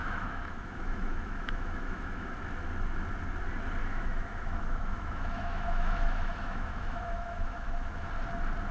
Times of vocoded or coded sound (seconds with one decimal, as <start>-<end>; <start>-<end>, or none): 0.0-2.3; 3.8-8.1